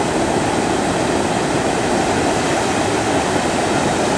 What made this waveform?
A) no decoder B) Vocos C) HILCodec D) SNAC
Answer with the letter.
A